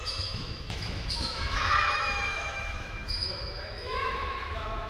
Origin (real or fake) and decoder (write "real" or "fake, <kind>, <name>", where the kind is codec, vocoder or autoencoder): fake, autoencoder, DAC-VAE